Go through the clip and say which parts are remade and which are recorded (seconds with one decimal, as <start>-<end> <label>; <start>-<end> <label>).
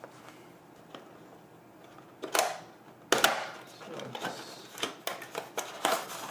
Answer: 0.0-6.3 recorded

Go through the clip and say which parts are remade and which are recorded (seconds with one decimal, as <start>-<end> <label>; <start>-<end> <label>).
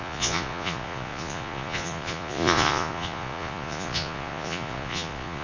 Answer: 0.0-5.4 remade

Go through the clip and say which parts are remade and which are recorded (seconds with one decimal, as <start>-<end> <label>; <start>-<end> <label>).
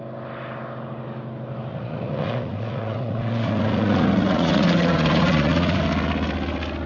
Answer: 0.0-1.7 recorded; 1.7-5.8 remade; 5.8-6.9 recorded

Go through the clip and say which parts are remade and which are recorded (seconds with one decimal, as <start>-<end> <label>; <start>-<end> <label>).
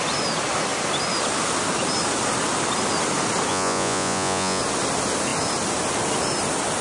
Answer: 0.0-3.5 recorded; 3.5-4.6 remade; 4.6-6.8 recorded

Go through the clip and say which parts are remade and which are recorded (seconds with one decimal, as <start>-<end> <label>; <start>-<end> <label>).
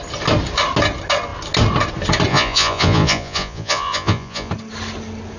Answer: 0.0-2.3 recorded; 2.3-4.5 remade; 4.5-5.4 recorded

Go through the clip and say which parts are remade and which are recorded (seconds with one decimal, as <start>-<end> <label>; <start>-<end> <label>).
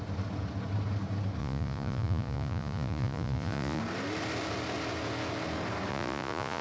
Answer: 0.0-1.4 recorded; 1.4-3.8 remade; 3.8-5.9 recorded; 5.9-6.6 remade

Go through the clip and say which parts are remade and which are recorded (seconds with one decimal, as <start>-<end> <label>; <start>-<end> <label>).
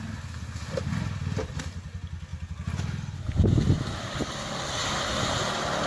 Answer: 0.0-5.9 recorded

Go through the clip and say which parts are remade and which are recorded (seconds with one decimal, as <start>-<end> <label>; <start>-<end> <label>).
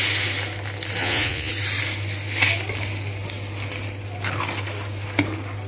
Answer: 0.0-1.0 recorded; 1.0-1.5 remade; 1.5-5.7 recorded